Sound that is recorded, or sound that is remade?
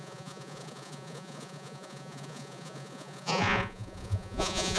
remade